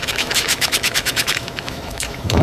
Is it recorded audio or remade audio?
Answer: remade